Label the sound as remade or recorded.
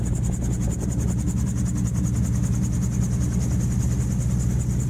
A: recorded